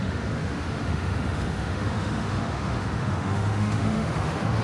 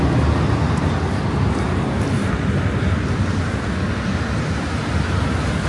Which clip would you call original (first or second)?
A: second